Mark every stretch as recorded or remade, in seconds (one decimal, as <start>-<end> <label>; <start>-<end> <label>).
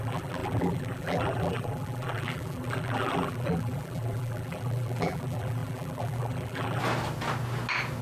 0.0-6.8 remade; 6.8-8.0 recorded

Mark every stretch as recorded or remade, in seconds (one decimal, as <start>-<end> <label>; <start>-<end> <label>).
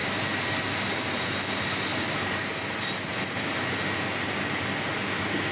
0.0-1.9 recorded; 1.9-3.6 remade; 3.6-5.5 recorded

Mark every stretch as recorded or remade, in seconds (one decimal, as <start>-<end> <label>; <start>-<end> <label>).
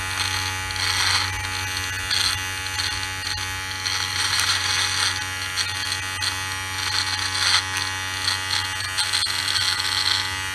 0.0-4.1 recorded; 4.1-4.7 remade; 4.7-10.5 recorded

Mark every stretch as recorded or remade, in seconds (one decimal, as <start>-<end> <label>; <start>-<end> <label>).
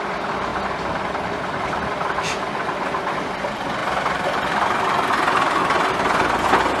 0.0-6.8 recorded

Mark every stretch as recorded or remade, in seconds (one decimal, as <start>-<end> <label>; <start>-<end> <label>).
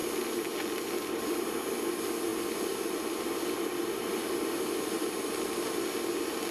0.0-2.3 recorded; 2.3-5.8 remade; 5.8-6.5 recorded